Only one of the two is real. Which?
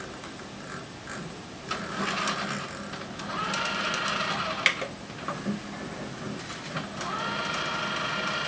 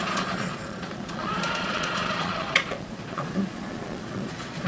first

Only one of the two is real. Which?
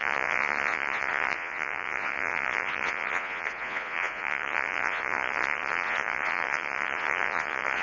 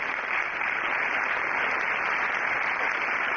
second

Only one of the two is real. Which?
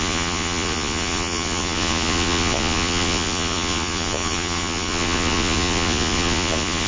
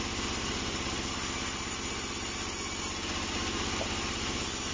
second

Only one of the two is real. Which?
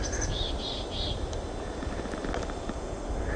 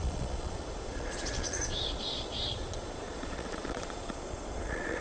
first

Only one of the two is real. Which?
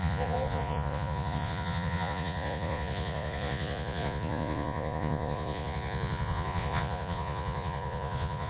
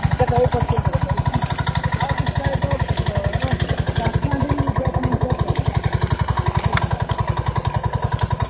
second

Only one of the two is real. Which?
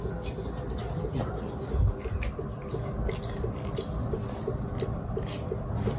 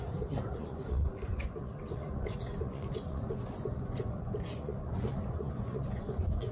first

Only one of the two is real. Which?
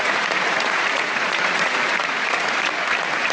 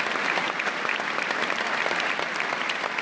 second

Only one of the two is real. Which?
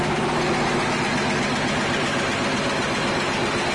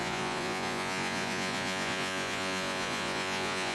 first